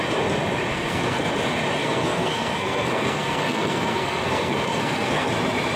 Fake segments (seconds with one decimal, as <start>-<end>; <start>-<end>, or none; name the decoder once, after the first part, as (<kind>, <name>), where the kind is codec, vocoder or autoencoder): 0.7-1.3 (codec, SNAC); 1.8-5.3